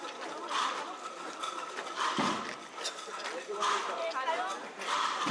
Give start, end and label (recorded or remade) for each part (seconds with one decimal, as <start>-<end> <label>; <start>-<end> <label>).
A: 0.0-5.3 recorded